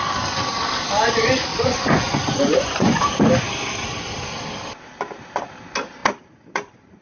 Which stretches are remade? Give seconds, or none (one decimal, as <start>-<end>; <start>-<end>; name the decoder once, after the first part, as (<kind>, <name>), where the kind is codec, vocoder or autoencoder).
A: 1.5-3.0 (vocoder, Vocos)